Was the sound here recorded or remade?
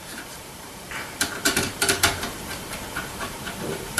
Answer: remade